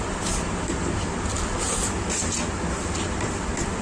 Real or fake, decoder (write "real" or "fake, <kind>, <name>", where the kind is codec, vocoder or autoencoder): real